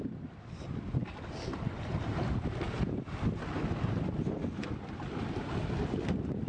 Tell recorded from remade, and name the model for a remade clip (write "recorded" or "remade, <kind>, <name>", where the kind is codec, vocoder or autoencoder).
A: recorded